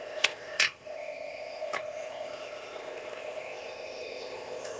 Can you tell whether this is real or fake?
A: fake